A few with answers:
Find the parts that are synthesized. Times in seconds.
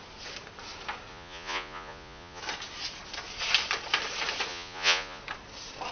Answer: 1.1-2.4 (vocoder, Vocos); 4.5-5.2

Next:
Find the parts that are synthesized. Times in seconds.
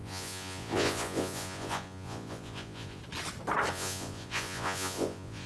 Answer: 0.0-3.0 (vocoder, Vocos); 3.7-5.5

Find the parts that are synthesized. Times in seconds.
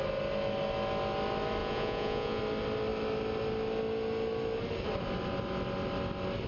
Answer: 1.6-2.4 (vocoder, Vocos)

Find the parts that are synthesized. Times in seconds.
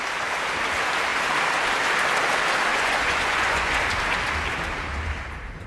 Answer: 2.7-3.8 (vocoder, Vocos)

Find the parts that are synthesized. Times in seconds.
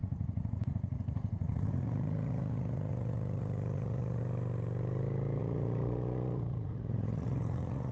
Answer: 0.0-4.2 (vocoder, Vocos); 5.4-7.9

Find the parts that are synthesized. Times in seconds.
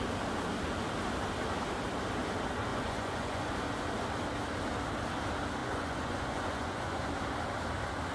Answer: 2.7-3.5 (vocoder, Vocos); 5.6-7.1